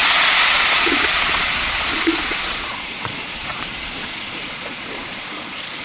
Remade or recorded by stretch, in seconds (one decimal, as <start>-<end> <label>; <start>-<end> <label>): 0.0-5.8 remade